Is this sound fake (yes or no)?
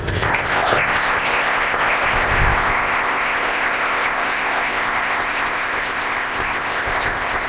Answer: yes